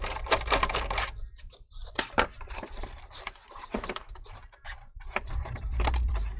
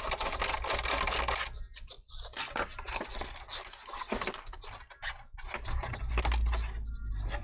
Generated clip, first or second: first